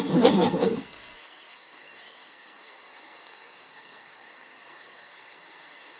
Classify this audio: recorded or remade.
remade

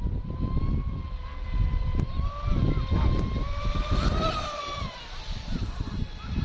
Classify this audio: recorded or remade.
recorded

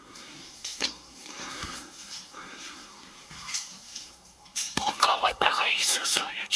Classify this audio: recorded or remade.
remade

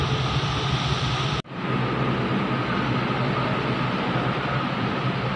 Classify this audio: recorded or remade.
recorded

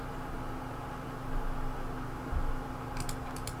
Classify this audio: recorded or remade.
recorded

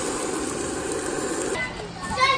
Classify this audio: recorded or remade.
recorded